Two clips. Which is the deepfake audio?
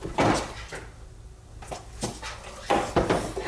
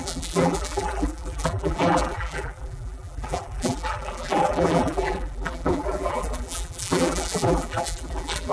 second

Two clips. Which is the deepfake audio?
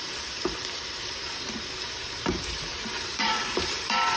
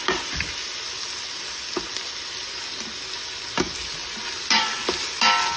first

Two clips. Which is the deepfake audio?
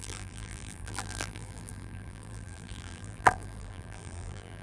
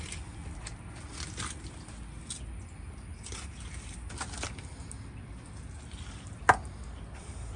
first